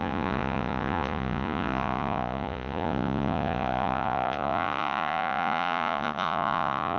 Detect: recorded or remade remade